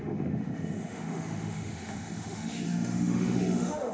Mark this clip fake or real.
fake